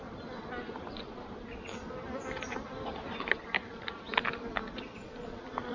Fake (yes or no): no